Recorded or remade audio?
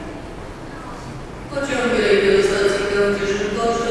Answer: recorded